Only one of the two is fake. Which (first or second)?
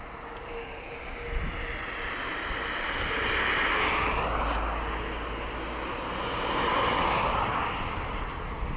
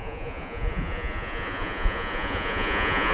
second